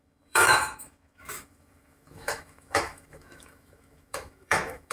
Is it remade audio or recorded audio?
remade